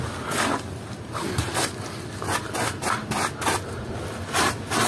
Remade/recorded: recorded